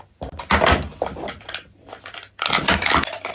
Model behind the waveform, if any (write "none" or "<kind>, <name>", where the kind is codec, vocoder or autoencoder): none